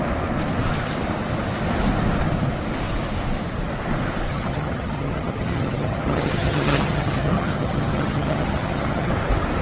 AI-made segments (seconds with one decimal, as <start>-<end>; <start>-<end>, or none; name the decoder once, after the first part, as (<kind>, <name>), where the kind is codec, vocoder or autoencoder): 4.3-9.1 (vocoder, HiFi-GAN)